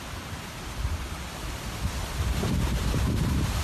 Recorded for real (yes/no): no